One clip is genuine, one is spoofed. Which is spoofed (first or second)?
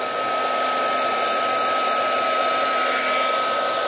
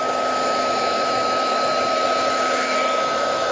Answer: second